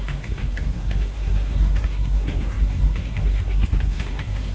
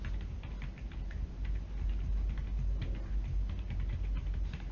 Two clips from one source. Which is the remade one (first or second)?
first